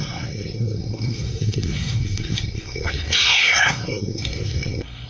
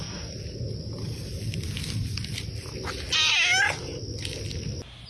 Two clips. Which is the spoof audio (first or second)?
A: first